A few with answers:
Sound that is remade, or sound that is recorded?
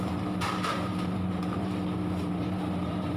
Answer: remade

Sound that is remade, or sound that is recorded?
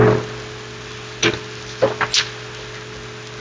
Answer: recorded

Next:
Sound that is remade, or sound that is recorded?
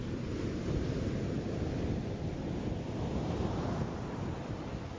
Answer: recorded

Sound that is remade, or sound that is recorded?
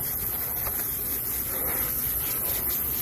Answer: recorded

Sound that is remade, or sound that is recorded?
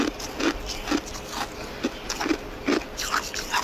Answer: recorded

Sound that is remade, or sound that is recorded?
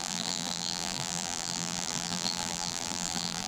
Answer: remade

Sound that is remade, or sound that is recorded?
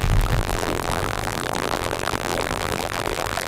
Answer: remade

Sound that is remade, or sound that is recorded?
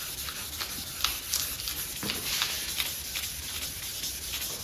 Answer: recorded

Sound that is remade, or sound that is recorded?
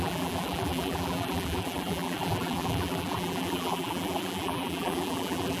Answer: remade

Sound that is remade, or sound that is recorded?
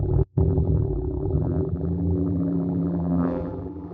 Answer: remade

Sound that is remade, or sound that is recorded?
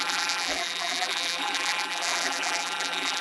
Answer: remade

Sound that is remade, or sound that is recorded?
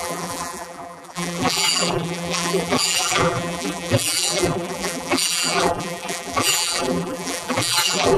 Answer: remade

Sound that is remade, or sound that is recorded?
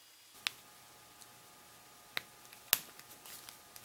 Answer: recorded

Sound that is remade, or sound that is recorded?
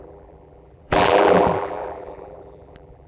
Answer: remade